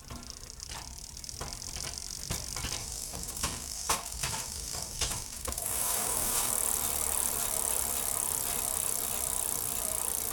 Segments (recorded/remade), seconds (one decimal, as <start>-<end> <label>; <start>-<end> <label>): 0.0-2.8 recorded; 2.8-6.5 remade; 6.5-10.3 recorded